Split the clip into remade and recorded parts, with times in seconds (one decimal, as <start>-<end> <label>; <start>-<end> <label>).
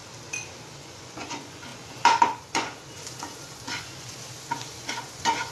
0.0-0.7 recorded; 0.7-5.5 remade